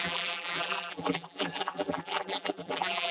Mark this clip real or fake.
fake